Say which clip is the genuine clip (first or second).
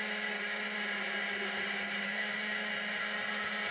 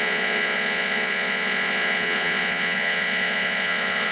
first